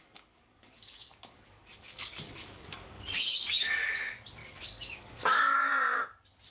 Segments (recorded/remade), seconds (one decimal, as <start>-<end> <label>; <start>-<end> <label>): 0.0-3.9 remade; 3.9-4.4 recorded; 4.4-5.7 remade; 5.7-6.5 recorded